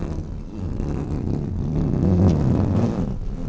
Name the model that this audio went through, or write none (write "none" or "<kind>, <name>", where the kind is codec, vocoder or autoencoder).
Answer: none